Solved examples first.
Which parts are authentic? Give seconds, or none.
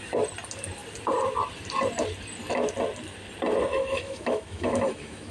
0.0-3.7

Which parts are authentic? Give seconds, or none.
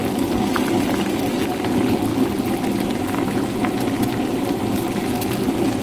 0.0-5.8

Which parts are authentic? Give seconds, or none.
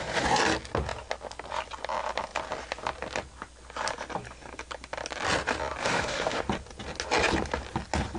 0.0-5.8; 6.4-8.2